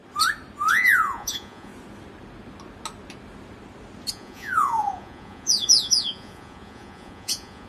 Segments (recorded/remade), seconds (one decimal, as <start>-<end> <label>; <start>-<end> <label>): 0.0-0.7 recorded; 0.7-1.7 remade; 1.7-4.1 recorded; 4.1-7.7 remade